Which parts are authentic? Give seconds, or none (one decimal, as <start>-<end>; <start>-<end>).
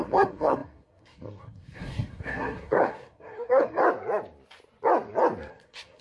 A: 3.8-5.5